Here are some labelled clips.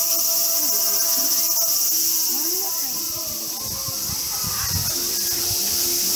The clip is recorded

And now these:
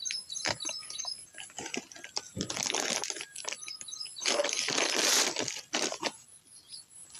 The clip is recorded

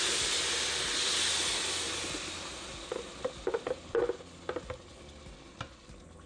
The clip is recorded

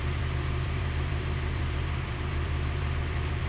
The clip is remade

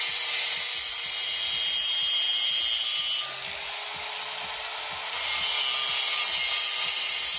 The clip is recorded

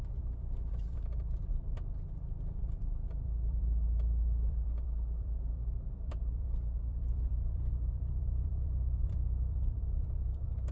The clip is remade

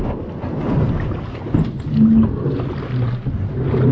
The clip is recorded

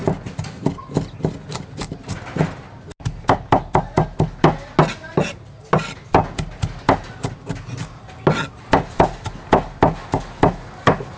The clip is recorded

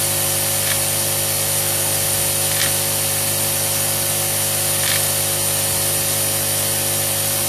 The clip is recorded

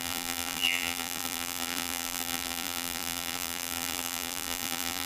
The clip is remade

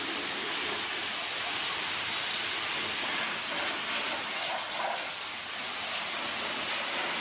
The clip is recorded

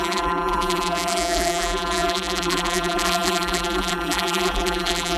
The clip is remade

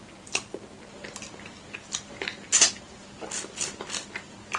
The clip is recorded